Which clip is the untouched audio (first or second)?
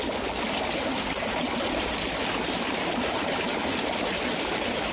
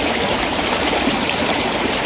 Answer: first